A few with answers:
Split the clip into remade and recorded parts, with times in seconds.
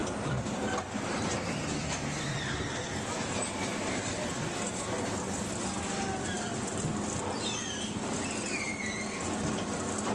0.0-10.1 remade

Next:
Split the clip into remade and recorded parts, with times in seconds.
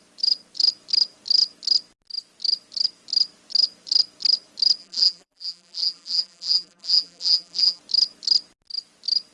0.0-4.8 recorded; 4.8-7.8 remade; 7.8-9.3 recorded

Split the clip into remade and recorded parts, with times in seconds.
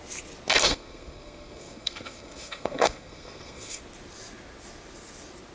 0.0-0.5 recorded; 0.5-3.8 remade; 3.8-5.5 recorded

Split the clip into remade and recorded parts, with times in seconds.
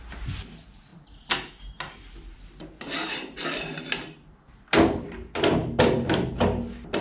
0.0-0.9 recorded; 0.9-3.8 remade; 3.8-5.6 recorded; 5.6-6.3 remade; 6.3-7.0 recorded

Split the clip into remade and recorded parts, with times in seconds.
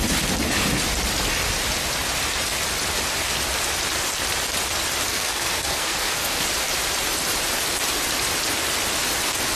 0.0-5.1 recorded; 5.1-6.4 remade; 6.4-9.5 recorded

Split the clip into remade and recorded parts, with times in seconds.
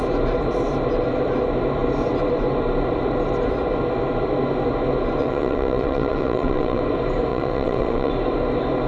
0.0-5.2 recorded; 5.2-6.8 remade; 6.8-7.3 recorded; 7.3-8.1 remade; 8.1-8.9 recorded